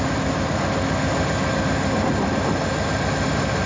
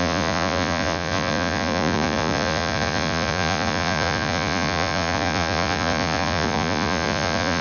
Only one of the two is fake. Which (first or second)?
second